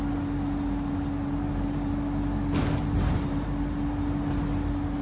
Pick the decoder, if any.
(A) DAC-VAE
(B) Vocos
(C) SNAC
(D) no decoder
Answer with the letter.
D